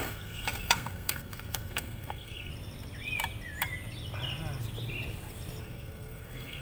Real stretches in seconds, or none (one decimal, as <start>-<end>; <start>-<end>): 2.5-5.6